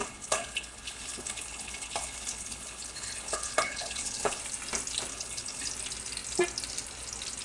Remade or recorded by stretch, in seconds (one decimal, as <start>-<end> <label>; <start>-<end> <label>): 0.0-4.4 remade; 4.4-5.1 recorded; 5.1-5.7 remade; 5.7-7.4 recorded